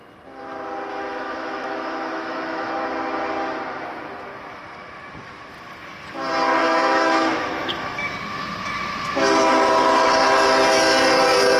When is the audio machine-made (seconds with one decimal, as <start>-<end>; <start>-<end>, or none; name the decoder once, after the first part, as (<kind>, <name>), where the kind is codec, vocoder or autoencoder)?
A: 0.9-2.7 (autoencoder, DAC-VAE); 6.6-8.1